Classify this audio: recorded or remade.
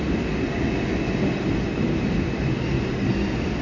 recorded